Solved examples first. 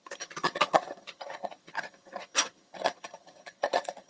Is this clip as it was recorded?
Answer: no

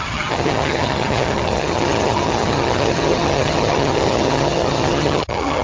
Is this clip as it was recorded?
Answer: no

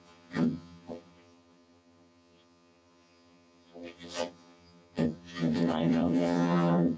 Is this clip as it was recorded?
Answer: no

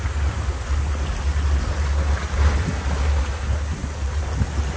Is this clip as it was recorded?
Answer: yes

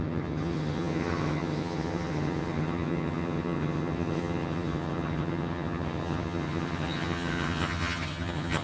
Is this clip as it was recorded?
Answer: no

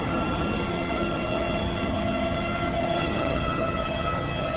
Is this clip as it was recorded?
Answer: no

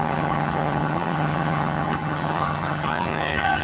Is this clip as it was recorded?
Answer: no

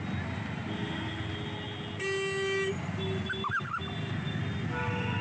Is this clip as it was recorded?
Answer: yes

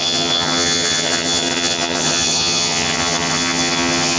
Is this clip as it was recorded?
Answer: no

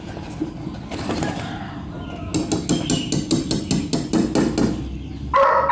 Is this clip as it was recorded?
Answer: yes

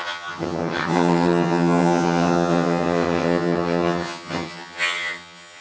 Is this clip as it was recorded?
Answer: no